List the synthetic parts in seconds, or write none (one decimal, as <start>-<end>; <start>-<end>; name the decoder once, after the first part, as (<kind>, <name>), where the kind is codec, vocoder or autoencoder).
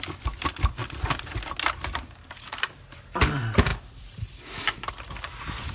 0.0-0.8 (vocoder, BigVGAN v2); 2.6-5.7